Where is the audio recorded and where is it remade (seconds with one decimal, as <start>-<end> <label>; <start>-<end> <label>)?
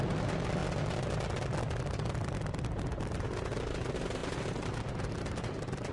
0.0-0.6 remade; 0.6-3.0 recorded; 3.0-4.2 remade; 4.2-4.9 recorded; 4.9-5.9 remade